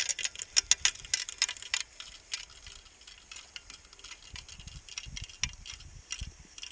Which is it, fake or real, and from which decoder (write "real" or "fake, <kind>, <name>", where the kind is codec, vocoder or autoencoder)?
real